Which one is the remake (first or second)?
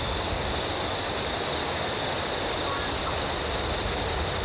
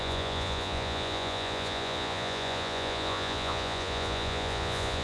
second